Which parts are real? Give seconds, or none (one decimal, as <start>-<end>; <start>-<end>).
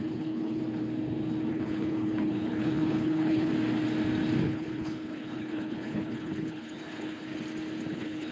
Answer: 0.6-1.5; 3.5-4.4; 7.3-7.9